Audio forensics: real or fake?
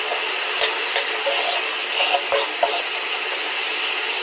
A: real